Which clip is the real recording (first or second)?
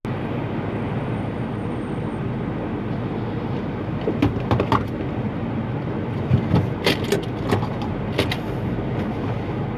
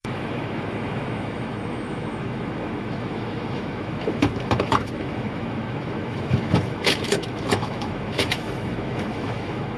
first